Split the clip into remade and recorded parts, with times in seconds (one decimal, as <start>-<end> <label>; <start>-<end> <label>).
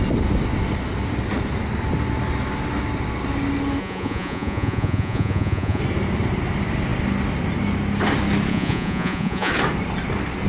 0.0-3.8 recorded; 3.8-5.8 remade; 5.8-8.5 recorded; 8.5-9.5 remade; 9.5-10.5 recorded